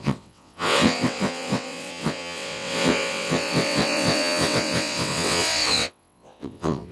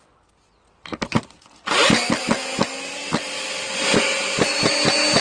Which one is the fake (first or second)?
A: first